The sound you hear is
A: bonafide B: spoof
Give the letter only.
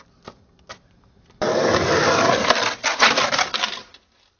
A